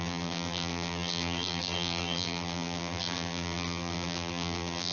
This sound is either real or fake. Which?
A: fake